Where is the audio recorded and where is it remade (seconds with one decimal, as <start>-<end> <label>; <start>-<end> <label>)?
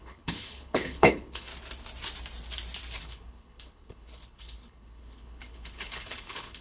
0.0-1.5 remade; 1.5-3.0 recorded; 3.0-6.6 remade